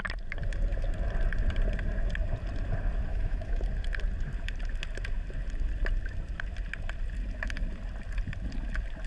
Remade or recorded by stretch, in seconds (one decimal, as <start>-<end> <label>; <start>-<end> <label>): 0.0-3.1 recorded; 3.1-3.6 remade; 3.6-9.1 recorded